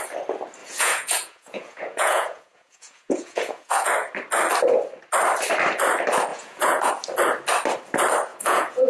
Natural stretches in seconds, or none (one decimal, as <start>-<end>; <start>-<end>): 0.0-0.6; 3.9-6.3; 6.9-8.3